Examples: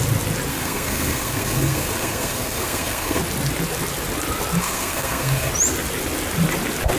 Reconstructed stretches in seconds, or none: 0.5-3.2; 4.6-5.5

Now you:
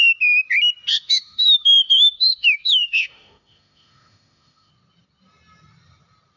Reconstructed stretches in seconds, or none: 0.9-4.7

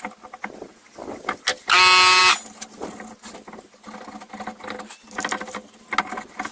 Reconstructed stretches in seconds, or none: none

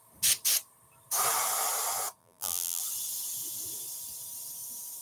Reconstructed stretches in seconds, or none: 2.2-2.8

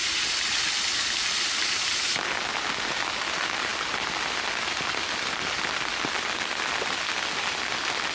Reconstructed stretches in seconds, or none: 0.0-2.1

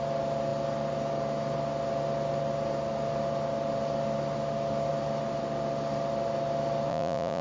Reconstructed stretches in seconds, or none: 6.9-7.4

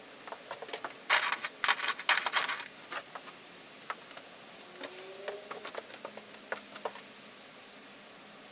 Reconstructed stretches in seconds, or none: none

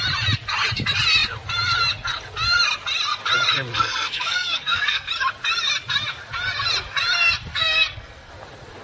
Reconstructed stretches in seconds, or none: 3.7-5.1; 7.5-8.3